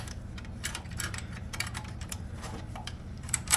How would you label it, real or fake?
fake